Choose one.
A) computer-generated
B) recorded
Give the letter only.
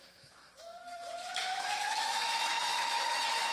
A